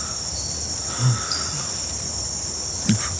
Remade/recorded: recorded